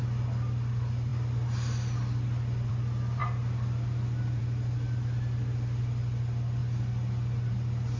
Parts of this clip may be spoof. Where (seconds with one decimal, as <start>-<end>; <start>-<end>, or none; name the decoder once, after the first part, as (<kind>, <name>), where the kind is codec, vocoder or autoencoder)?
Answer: none

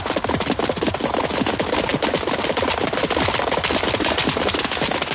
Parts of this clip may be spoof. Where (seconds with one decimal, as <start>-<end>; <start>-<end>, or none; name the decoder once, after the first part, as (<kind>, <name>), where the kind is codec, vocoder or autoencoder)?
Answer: none

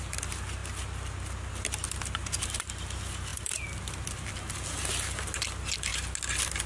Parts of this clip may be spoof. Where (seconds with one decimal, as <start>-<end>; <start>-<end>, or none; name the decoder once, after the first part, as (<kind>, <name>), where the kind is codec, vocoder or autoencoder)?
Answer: none

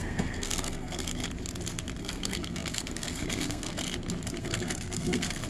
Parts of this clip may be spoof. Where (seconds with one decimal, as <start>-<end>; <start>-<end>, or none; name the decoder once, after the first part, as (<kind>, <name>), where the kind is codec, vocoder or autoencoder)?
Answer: 0.0-1.2 (codec, SNAC); 2.0-3.8; 4.4-5.5

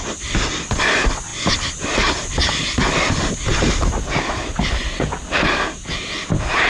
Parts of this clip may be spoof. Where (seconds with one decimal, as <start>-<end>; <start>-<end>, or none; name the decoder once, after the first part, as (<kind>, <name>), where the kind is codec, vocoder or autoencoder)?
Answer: 3.5-4.4 (vocoder, BigVGAN v2)

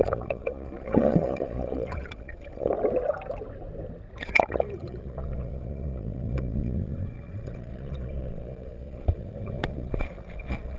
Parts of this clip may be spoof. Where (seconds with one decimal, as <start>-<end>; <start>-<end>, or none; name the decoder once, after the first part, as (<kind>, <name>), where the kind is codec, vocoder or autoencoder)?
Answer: 0.0-2.7 (vocoder, Vocos); 4.2-10.8